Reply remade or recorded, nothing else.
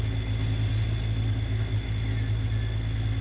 recorded